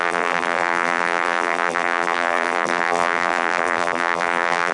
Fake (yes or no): yes